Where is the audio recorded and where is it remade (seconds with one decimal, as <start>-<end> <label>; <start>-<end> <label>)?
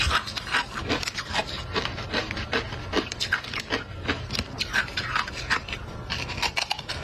0.0-7.0 recorded